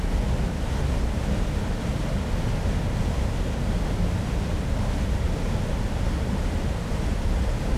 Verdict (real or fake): real